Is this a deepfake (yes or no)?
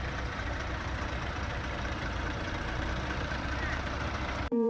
yes